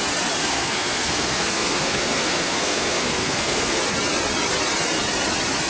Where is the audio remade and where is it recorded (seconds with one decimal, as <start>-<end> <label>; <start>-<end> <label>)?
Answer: 0.0-0.4 recorded; 0.4-3.8 remade; 3.8-5.7 recorded